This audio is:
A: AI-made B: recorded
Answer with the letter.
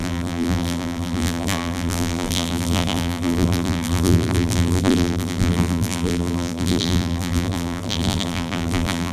A